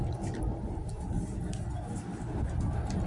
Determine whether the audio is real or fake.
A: real